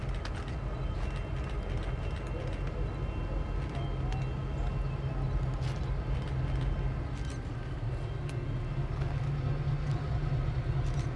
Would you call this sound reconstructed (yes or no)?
no